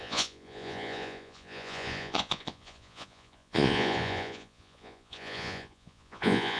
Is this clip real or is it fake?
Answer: fake